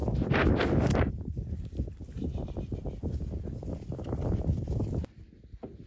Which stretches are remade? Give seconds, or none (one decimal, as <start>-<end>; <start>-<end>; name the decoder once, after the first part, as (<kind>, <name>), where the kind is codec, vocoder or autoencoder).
0.0-1.2 (vocoder, BigVGAN v2); 2.3-5.4